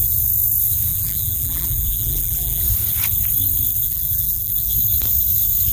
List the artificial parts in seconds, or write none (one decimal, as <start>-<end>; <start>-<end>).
0.9-2.6; 3.7-4.7